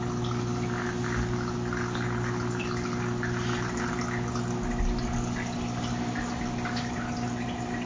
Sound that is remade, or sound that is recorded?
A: recorded